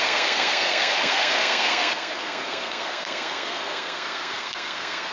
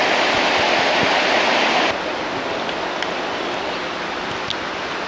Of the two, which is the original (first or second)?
second